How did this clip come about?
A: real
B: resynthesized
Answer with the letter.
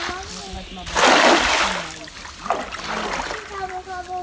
A